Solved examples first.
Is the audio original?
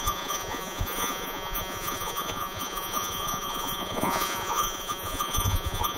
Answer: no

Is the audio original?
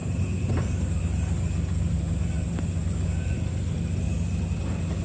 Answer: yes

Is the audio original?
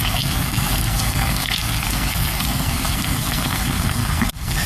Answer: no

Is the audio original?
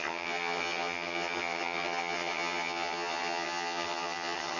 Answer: no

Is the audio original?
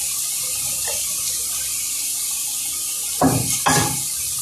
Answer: yes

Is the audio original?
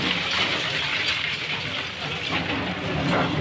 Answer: yes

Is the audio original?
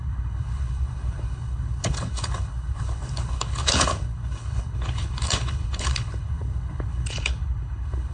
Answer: no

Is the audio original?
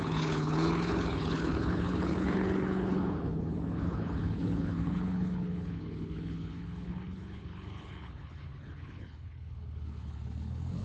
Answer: no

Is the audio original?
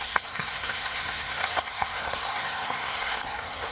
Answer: no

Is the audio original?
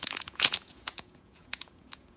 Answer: no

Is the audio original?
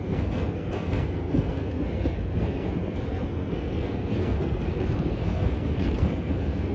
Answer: no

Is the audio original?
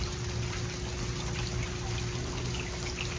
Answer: yes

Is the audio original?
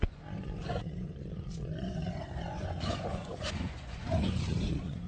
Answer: no